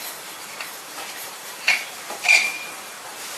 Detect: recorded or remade remade